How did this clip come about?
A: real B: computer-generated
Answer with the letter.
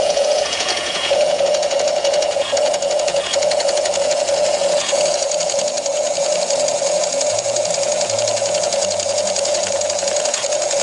B